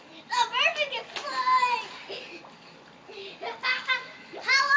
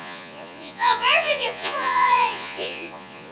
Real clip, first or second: first